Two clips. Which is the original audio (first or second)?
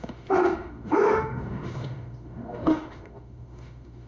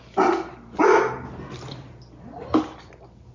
second